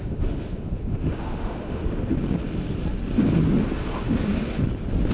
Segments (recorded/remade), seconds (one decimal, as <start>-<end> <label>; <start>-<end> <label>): 0.0-1.8 remade; 1.8-5.1 recorded